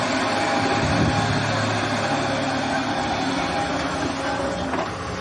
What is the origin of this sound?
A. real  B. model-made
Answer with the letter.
A